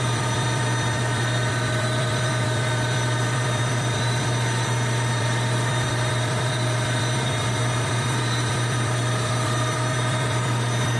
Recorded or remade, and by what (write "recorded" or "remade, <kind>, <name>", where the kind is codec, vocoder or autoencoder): remade, vocoder, BigVGAN v2